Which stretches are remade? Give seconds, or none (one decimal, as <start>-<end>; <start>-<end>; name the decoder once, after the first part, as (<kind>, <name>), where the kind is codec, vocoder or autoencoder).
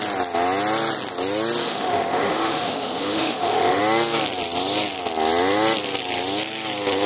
1.6-3.8 (autoencoder, DAC-VAE)